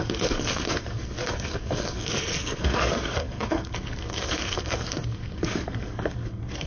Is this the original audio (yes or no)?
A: no